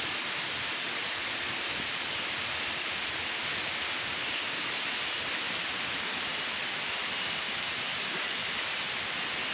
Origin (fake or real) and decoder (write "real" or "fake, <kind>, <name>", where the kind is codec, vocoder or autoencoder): real